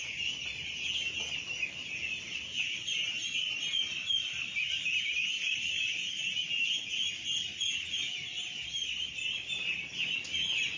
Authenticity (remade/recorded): recorded